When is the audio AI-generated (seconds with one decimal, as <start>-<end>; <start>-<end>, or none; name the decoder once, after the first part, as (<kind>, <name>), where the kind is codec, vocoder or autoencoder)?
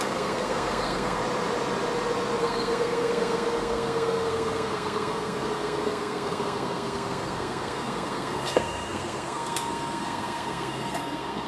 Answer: 0.0-1.2 (codec, SNAC); 2.4-11.5